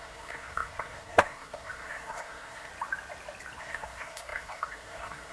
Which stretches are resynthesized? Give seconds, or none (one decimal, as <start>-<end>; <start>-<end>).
0.0-2.7; 3.6-5.3